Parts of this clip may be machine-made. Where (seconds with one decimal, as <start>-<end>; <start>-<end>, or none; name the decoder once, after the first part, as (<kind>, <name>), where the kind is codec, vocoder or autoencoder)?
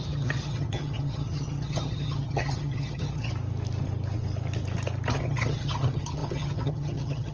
0.0-3.3 (vocoder, HiFi-GAN); 5.1-7.3